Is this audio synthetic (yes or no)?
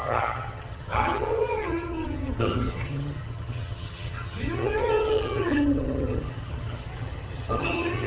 yes